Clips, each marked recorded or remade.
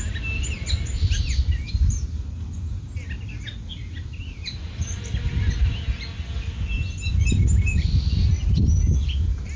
recorded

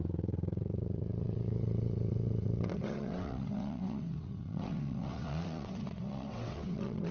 remade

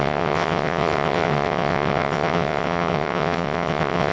remade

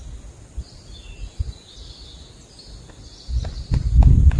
recorded